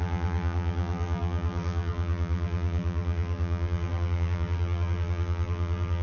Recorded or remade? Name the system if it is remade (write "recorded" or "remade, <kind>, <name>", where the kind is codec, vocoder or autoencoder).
remade, vocoder, BigVGAN v2